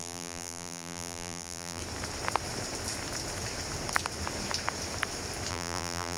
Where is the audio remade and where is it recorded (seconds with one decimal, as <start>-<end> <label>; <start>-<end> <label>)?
0.0-1.8 remade; 1.8-5.5 recorded; 5.5-6.2 remade